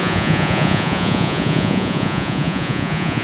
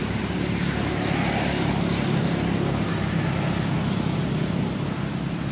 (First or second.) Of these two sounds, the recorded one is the second